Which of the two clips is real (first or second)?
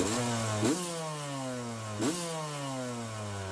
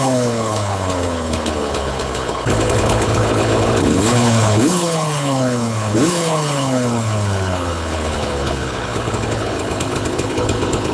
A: first